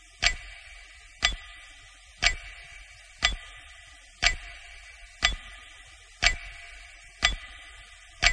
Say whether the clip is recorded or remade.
recorded